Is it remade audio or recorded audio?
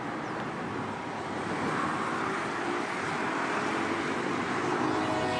recorded